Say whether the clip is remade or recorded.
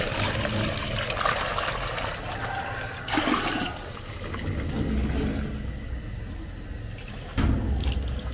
recorded